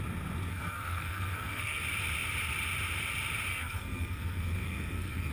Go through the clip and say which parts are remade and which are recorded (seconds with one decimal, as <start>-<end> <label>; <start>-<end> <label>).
0.0-0.5 recorded; 0.5-1.8 remade; 1.8-3.5 recorded; 3.5-5.3 remade